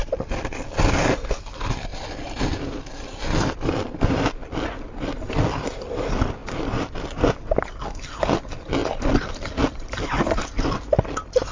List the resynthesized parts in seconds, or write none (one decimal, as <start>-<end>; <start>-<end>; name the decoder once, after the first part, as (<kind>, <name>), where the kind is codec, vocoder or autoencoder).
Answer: none